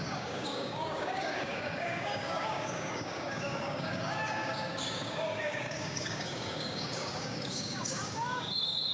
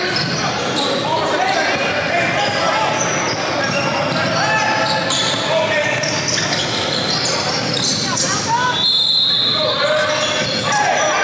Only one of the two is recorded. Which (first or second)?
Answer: second